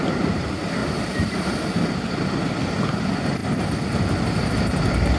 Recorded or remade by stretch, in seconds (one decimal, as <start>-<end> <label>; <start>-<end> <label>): 0.0-0.8 remade; 0.8-2.9 recorded; 2.9-5.2 remade